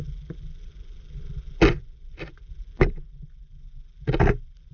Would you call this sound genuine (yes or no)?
yes